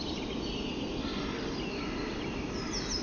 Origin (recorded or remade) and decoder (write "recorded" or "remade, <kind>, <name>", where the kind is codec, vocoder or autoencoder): recorded